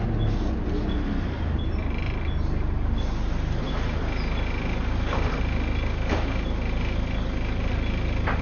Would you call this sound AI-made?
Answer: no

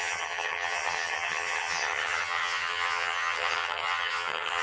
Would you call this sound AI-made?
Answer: yes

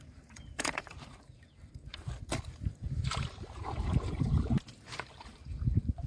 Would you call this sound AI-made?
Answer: yes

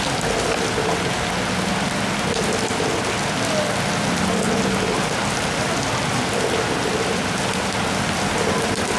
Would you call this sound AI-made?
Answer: no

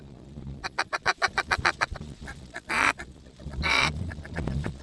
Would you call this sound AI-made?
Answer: yes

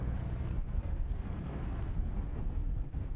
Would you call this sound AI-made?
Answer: yes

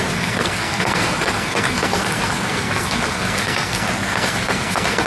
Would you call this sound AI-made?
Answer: yes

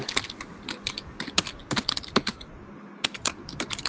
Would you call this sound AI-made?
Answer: no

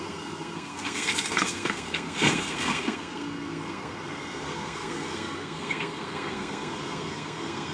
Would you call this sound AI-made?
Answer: yes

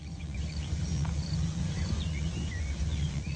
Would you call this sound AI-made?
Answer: yes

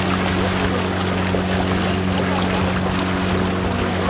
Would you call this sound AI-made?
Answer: no